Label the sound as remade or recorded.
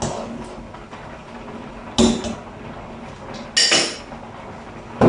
recorded